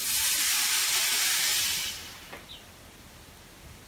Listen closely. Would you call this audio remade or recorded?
recorded